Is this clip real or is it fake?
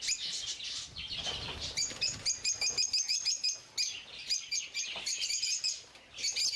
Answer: real